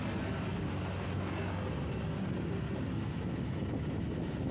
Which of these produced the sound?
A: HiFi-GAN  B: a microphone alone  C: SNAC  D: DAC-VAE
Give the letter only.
B